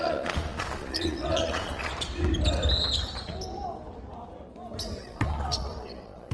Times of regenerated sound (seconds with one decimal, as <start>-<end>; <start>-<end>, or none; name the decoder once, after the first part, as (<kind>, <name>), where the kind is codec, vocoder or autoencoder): 0.0-1.9 (vocoder, Vocos); 5.0-6.3